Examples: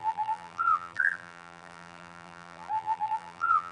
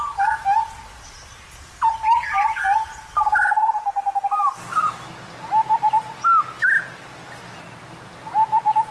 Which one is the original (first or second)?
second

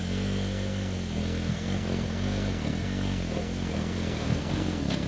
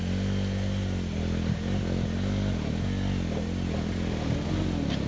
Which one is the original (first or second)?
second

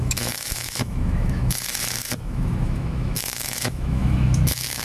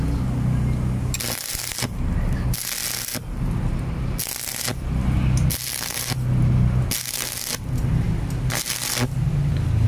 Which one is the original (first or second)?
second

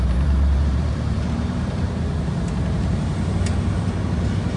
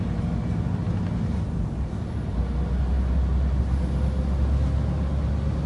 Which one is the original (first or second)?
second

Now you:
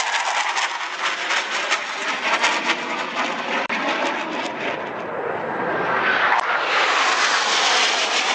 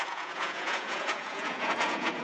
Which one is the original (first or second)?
first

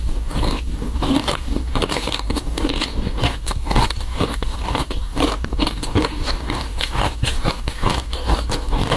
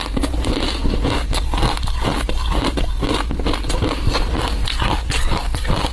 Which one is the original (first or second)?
second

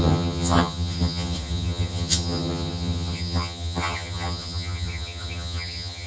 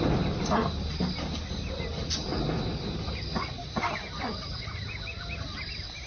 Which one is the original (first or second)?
second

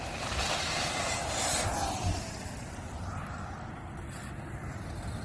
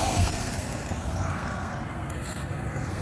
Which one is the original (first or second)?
first